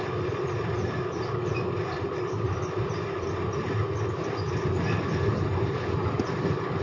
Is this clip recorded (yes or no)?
yes